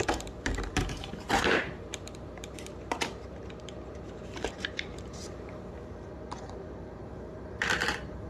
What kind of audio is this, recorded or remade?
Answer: remade